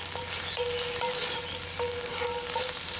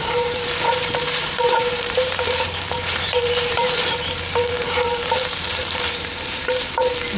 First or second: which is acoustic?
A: first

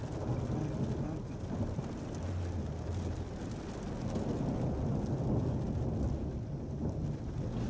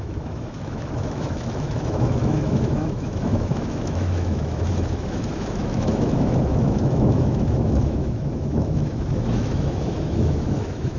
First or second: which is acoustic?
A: first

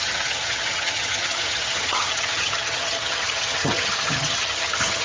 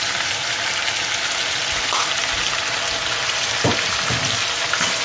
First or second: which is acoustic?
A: second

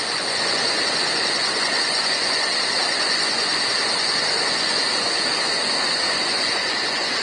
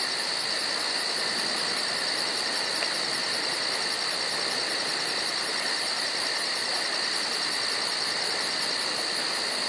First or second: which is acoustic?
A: second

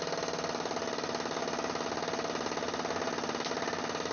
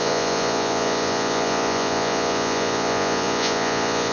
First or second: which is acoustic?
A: first